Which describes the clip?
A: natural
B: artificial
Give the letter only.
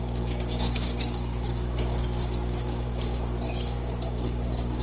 B